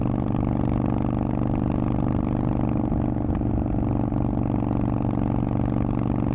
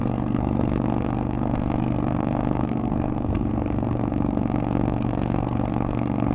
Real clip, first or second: first